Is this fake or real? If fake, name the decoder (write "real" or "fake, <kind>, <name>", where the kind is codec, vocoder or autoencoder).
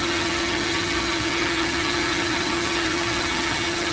fake, vocoder, HiFi-GAN